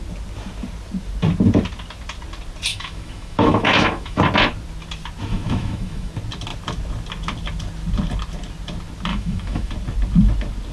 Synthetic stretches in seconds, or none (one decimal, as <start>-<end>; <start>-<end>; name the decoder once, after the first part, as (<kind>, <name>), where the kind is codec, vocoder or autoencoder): 2.7-4.2 (autoencoder, DAC-VAE); 5.3-6.1; 9.1-9.7